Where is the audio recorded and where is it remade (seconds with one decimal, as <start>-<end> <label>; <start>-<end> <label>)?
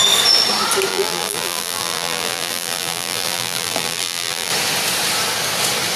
0.0-0.9 recorded; 0.9-4.5 remade; 4.5-6.0 recorded